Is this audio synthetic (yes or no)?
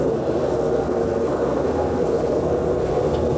yes